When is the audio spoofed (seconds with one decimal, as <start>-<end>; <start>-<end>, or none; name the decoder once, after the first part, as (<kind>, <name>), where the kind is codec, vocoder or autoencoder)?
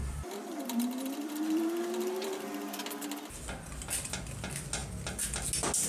0.0-2.7 (vocoder, BigVGAN v2)